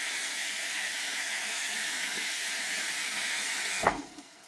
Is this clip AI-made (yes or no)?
yes